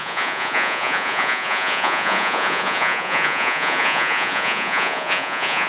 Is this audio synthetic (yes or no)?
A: yes